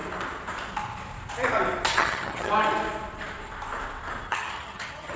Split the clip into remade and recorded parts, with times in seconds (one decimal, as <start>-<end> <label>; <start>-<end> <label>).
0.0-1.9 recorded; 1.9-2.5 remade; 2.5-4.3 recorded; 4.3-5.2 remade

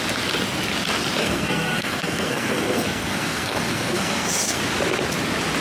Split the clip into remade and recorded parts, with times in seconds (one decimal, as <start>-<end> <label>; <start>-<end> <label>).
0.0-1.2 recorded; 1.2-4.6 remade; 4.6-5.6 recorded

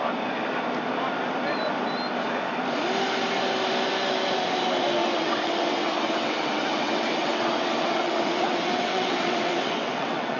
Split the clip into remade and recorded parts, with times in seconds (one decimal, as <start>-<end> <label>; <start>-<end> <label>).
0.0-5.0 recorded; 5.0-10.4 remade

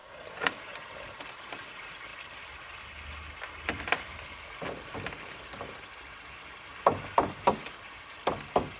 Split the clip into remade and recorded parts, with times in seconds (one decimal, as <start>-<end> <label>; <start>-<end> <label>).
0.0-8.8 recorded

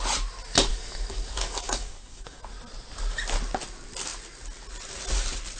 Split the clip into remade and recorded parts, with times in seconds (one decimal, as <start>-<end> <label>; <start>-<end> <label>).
0.0-0.7 recorded; 0.7-2.4 remade; 2.4-5.6 recorded

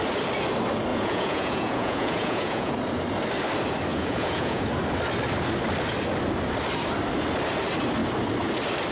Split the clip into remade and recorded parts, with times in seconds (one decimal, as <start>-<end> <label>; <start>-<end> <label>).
0.0-0.9 recorded; 0.9-2.7 remade; 2.7-3.9 recorded; 3.9-4.6 remade; 4.6-8.9 recorded